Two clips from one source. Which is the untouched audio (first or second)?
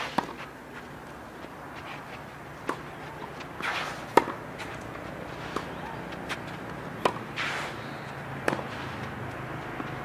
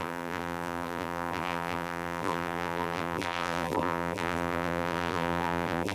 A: first